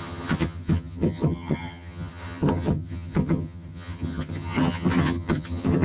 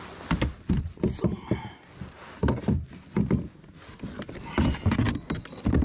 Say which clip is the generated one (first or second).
first